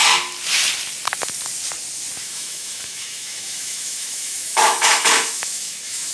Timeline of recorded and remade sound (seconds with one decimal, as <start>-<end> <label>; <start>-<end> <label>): 0.0-2.2 recorded; 2.2-6.1 remade